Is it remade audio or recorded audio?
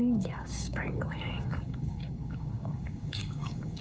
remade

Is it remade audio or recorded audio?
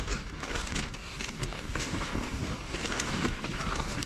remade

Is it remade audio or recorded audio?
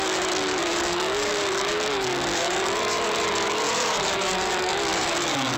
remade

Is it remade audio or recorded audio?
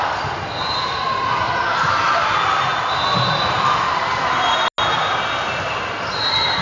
recorded